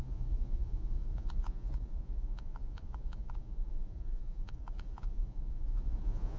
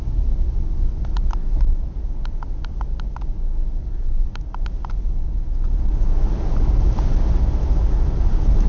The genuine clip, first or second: second